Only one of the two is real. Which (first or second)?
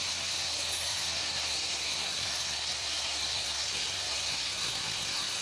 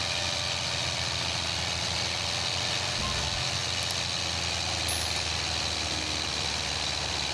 second